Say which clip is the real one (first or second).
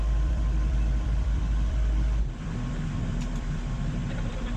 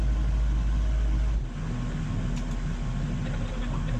second